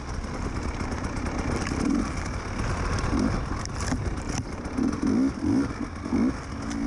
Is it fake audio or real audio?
real